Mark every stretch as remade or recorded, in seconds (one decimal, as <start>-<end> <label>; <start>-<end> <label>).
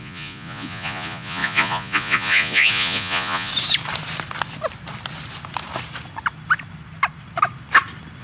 0.0-3.5 remade; 3.5-8.2 recorded